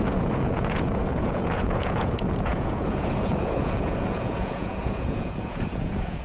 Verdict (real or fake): fake